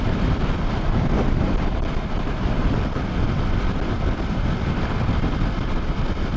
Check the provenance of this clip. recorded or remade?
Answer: recorded